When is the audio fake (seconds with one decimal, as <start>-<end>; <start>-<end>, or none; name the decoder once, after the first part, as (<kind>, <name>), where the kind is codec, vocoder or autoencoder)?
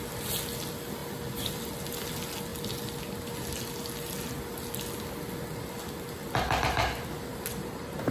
7.3-8.1 (vocoder, BigVGAN v2)